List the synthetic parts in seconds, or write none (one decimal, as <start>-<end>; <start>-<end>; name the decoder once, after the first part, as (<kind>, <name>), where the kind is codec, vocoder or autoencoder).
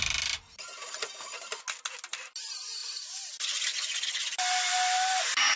none